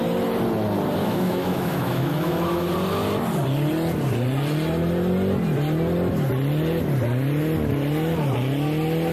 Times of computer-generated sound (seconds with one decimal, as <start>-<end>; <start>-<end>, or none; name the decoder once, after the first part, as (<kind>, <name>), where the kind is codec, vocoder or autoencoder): 1.0-2.7 (autoencoder, DAC-VAE)